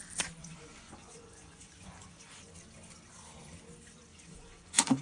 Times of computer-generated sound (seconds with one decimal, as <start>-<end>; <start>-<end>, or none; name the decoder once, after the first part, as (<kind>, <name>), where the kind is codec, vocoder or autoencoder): 0.4-2.5 (vocoder, Vocos); 4.1-5.0